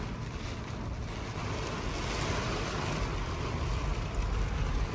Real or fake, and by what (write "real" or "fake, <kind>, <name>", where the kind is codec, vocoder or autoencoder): real